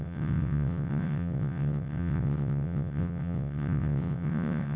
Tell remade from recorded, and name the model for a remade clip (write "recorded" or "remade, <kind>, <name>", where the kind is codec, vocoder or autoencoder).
remade, vocoder, WaveNeXt